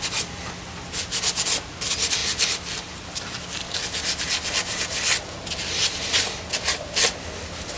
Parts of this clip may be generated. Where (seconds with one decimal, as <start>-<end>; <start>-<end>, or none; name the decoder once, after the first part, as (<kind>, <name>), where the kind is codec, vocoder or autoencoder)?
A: 5.8-7.0 (vocoder, BigVGAN v2)